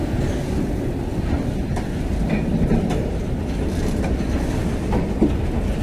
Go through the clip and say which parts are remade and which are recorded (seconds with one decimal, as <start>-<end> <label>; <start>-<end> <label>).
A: 0.0-4.6 recorded; 4.6-5.1 remade; 5.1-5.8 recorded